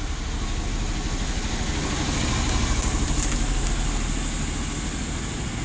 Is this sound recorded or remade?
recorded